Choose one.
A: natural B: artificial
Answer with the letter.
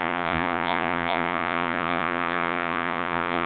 B